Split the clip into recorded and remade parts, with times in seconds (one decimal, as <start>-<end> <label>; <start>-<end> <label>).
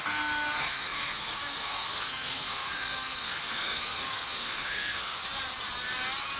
0.0-5.2 remade; 5.2-6.4 recorded